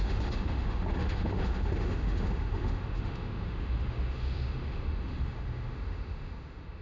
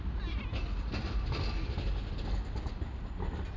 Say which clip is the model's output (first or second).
first